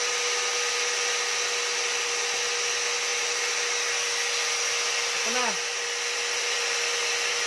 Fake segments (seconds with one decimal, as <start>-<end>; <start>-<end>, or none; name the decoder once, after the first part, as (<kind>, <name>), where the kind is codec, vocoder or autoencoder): none